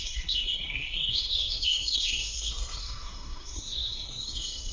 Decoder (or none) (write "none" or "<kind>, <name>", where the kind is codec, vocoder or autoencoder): codec, SNAC